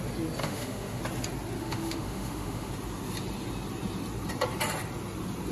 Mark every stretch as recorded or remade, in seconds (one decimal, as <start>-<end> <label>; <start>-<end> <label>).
0.0-0.4 recorded; 0.4-1.0 remade; 1.0-1.6 recorded; 1.6-2.7 remade; 2.7-5.5 recorded

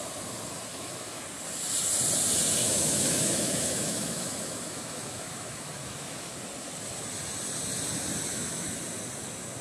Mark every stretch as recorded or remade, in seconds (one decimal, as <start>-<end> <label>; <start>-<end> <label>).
0.0-0.7 recorded; 0.7-1.2 remade; 1.2-2.6 recorded; 2.6-6.3 remade; 6.3-8.3 recorded; 8.3-8.8 remade; 8.8-9.6 recorded

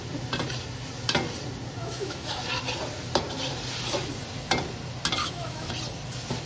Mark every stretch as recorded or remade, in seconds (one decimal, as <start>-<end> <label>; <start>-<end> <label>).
0.0-1.8 recorded; 1.8-2.4 remade; 2.4-5.2 recorded; 5.2-5.7 remade; 5.7-6.5 recorded

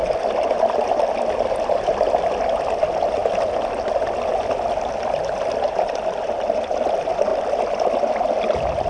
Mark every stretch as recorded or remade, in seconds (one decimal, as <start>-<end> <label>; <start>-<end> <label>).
0.0-8.9 recorded

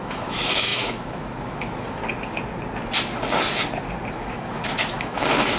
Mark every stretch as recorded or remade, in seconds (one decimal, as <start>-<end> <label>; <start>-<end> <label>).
0.0-2.0 remade; 2.0-4.1 recorded; 4.1-5.6 remade

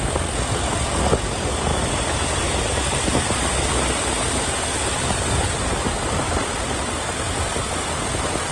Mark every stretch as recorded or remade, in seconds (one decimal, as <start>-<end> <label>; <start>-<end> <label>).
0.0-8.5 recorded

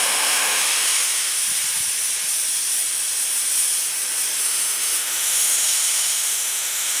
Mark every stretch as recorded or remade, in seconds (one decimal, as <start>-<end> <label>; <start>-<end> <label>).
0.0-1.4 remade; 1.4-4.4 recorded; 4.4-7.0 remade